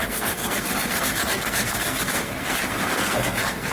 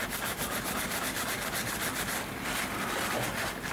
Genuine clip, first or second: second